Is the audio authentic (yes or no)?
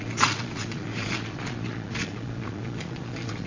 no